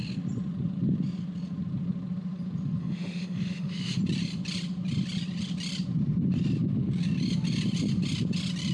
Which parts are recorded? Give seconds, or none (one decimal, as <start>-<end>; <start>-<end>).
0.0-2.8; 4.0-8.7